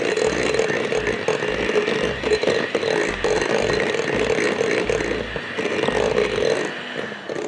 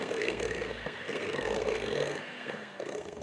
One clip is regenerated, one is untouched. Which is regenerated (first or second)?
second